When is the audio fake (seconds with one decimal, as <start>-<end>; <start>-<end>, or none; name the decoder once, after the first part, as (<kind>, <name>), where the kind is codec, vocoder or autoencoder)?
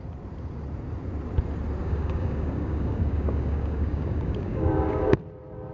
1.8-5.2 (codec, DAC)